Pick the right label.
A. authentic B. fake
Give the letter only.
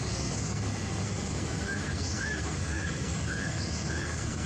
B